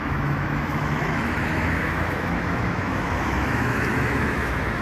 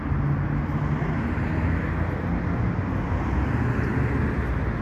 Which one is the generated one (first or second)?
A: first